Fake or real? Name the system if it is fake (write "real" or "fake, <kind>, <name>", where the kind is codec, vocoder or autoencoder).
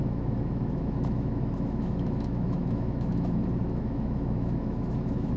fake, autoencoder, DAC-VAE